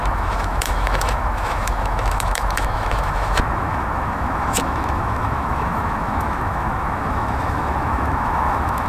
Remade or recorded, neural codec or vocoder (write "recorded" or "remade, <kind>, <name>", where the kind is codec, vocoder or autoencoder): remade, autoencoder, DAC-VAE